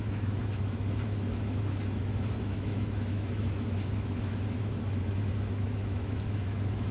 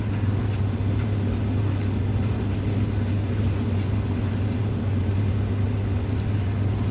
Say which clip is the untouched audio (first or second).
second